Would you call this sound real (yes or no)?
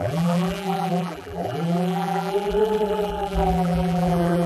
no